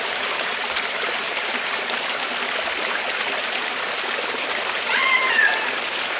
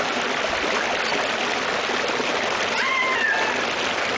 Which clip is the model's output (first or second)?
first